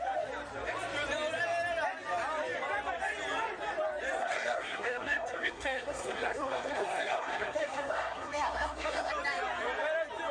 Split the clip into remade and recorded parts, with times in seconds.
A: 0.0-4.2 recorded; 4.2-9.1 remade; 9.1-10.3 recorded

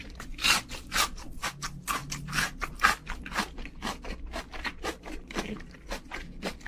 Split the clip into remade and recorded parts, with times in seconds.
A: 0.0-6.7 recorded